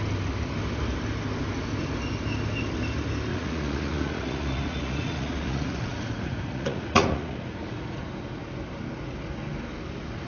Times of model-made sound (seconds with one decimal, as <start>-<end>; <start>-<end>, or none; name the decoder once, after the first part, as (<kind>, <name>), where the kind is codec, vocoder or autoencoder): 3.3-8.0 (vocoder, Vocos)